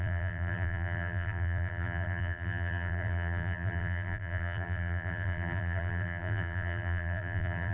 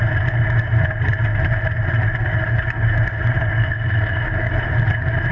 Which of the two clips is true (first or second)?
second